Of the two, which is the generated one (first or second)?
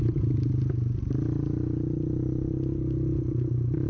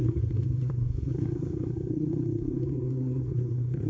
second